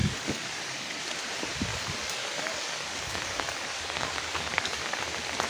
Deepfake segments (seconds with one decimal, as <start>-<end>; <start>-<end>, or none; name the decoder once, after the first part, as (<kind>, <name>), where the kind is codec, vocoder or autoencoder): 0.0-1.0 (codec, DAC); 1.7-5.0

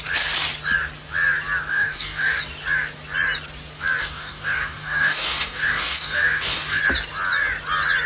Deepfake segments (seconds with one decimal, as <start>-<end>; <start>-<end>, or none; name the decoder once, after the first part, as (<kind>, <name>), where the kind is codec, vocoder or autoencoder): 1.7-2.4 (codec, DAC); 4.0-6.8

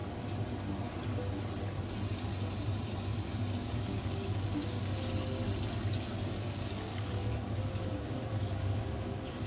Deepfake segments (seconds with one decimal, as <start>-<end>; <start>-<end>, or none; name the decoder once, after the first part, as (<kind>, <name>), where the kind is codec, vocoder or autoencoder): 3.6-4.8 (codec, DAC); 6.1-9.5

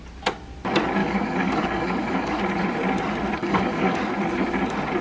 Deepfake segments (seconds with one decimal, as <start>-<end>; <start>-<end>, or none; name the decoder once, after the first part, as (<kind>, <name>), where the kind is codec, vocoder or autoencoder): 1.0-2.4 (codec, DAC); 3.4-4.0

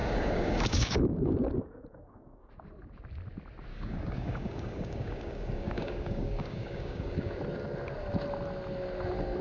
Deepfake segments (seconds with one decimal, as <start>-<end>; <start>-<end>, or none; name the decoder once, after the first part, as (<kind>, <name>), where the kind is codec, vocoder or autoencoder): 0.0-2.5 (codec, DAC); 3.7-7.4

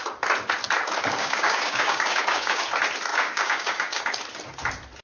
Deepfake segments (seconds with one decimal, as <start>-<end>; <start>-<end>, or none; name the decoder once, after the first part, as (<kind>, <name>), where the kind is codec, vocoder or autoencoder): 1.2-2.6 (codec, DAC); 3.1-4.0

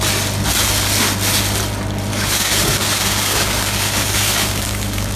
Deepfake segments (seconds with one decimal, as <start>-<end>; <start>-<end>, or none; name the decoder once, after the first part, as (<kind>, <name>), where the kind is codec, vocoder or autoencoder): 2.1-5.2 (codec, DAC)

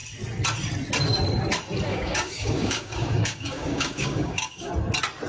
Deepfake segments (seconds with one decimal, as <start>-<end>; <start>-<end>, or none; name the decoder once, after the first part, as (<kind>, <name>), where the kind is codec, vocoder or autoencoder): 1.9-4.7 (codec, DAC)